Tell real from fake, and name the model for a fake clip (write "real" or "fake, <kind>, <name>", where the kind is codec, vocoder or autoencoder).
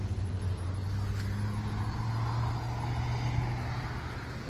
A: real